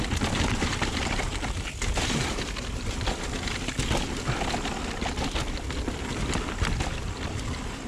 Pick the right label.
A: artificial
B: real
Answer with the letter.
B